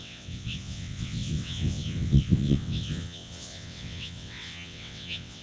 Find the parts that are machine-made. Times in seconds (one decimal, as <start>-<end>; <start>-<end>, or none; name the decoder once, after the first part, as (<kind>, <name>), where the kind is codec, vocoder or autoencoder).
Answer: 0.0-5.4 (vocoder, WaveNeXt)